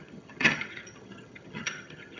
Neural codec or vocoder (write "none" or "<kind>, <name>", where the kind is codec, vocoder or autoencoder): vocoder, HiFi-GAN